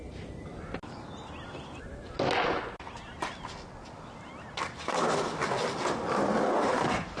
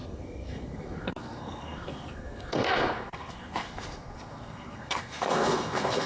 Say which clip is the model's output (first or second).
second